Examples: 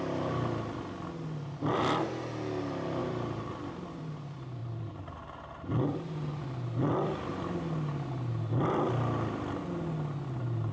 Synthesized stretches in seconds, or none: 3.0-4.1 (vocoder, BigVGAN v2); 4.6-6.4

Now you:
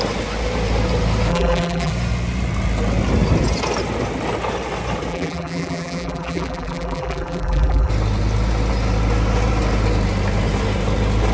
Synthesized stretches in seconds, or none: 1.3-1.9 (vocoder, BigVGAN v2); 5.1-7.9

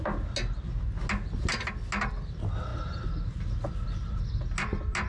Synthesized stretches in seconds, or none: none

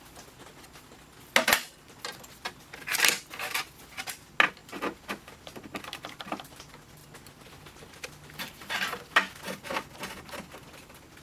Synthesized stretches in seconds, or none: none

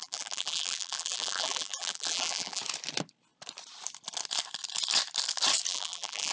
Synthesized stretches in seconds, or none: 0.0-2.6 (vocoder, BigVGAN v2); 5.7-6.3